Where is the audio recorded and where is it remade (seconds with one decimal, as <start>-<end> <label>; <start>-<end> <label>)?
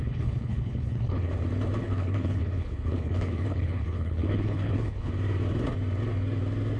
0.0-1.3 remade; 1.3-1.8 recorded; 1.8-5.1 remade; 5.1-6.8 recorded